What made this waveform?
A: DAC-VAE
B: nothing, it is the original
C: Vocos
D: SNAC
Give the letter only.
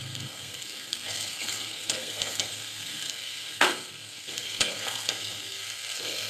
D